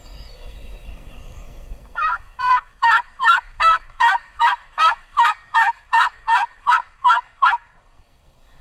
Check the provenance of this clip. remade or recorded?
remade